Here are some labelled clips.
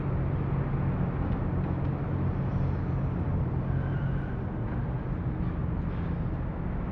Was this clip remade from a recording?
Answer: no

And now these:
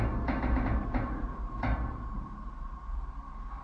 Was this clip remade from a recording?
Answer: no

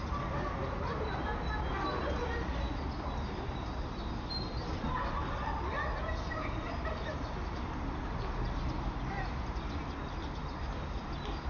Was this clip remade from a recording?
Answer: no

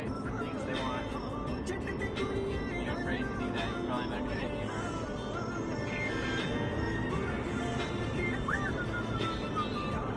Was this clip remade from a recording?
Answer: no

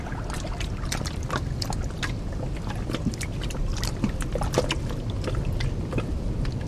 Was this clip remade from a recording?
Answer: no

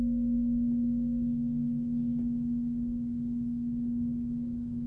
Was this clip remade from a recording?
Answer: yes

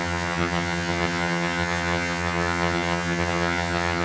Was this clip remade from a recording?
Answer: yes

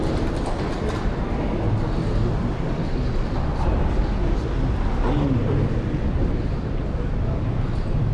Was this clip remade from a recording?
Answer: no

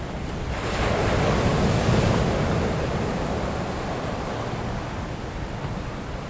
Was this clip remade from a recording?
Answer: no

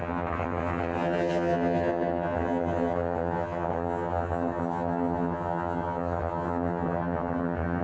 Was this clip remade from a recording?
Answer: yes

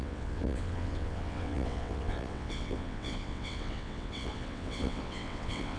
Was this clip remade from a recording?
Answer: yes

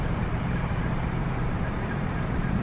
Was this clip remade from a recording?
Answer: yes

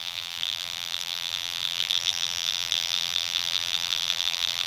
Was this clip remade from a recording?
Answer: yes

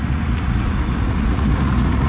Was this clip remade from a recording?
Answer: yes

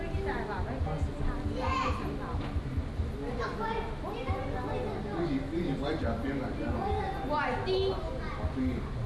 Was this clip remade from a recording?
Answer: no